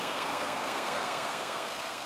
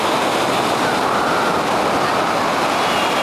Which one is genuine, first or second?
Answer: second